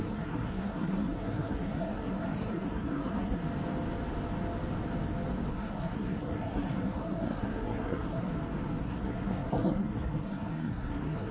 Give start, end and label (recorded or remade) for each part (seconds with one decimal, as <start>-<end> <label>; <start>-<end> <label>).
0.0-3.4 remade; 3.4-5.5 recorded; 5.5-8.3 remade; 8.3-8.8 recorded; 8.8-11.3 remade